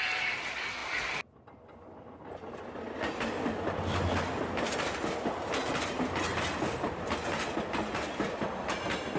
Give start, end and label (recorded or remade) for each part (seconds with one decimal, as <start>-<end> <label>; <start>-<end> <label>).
0.0-9.2 recorded